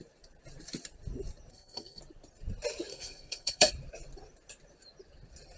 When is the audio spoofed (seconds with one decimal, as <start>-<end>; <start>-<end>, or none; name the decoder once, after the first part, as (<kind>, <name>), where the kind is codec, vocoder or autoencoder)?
1.5-2.0 (codec, SNAC); 2.9-3.7